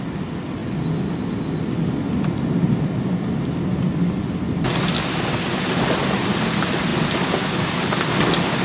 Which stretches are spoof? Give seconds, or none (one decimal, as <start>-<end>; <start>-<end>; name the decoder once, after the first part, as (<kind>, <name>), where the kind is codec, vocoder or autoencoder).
none